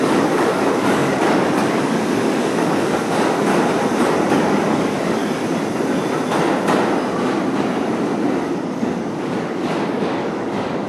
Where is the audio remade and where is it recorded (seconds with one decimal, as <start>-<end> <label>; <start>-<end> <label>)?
0.0-3.5 remade; 3.5-4.3 recorded; 4.3-5.2 remade; 5.2-8.4 recorded; 8.4-10.9 remade